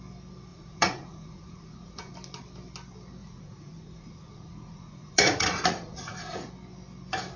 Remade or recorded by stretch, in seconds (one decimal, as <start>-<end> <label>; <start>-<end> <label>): 0.0-0.5 recorded; 0.5-2.1 remade; 2.1-3.2 recorded; 3.2-6.5 remade; 6.5-7.4 recorded